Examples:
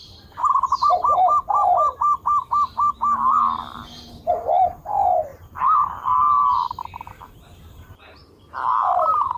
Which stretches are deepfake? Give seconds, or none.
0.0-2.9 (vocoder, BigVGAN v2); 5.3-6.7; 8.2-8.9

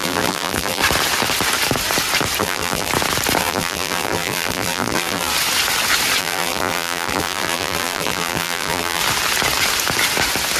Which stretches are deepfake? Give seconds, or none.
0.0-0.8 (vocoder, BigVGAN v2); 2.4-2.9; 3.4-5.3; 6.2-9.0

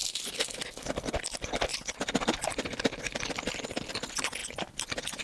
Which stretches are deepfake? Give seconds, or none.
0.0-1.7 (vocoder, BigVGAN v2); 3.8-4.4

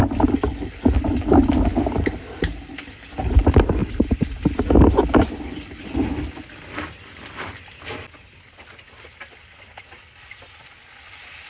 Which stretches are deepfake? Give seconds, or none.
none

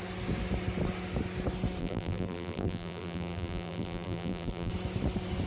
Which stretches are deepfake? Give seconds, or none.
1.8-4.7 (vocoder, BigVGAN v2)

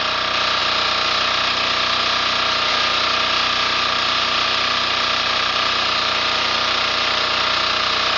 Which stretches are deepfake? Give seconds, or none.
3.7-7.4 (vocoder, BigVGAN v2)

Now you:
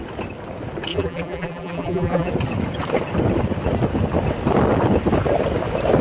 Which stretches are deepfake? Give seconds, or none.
0.9-2.3 (vocoder, BigVGAN v2)